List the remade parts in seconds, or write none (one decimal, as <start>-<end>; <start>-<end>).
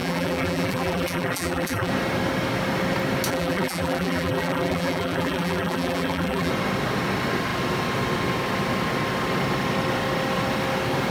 0.0-1.9; 3.3-6.5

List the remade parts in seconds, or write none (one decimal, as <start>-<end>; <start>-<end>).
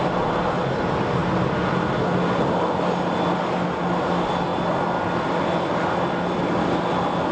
none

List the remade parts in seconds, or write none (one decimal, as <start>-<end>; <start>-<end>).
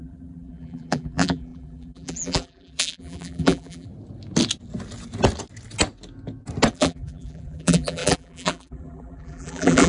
0.0-3.9; 6.7-9.9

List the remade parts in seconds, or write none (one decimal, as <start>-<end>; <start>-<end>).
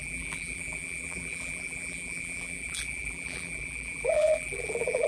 0.0-5.1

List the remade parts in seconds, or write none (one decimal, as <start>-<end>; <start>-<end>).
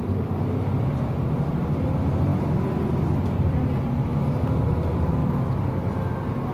0.0-4.1; 4.7-5.2; 6.1-6.5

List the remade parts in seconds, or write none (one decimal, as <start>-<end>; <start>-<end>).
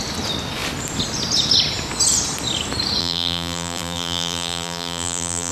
3.0-5.5